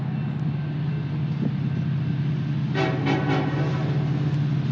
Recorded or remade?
recorded